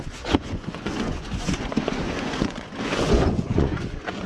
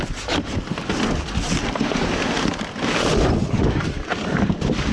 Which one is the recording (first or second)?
second